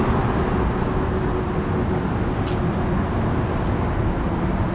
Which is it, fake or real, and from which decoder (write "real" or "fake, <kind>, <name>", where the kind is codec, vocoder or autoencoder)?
real